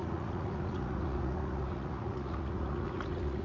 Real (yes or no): no